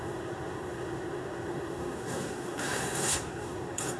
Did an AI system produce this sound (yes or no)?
yes